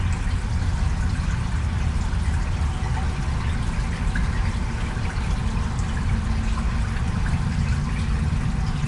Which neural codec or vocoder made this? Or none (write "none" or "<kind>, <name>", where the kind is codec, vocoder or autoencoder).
none